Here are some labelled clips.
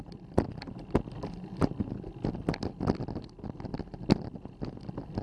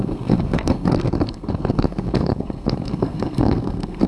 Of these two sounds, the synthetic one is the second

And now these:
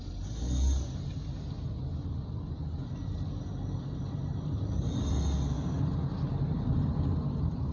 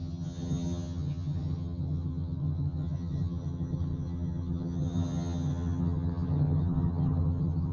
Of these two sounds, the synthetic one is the second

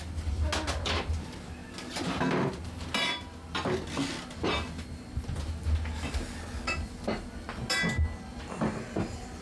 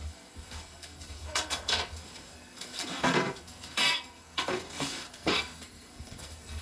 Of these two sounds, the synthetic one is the second